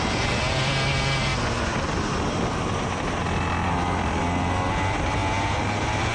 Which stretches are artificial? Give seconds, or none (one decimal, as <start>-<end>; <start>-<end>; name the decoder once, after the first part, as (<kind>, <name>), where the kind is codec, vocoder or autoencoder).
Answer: none